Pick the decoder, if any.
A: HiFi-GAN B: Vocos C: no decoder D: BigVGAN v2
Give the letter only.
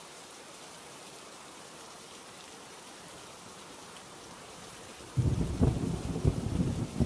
D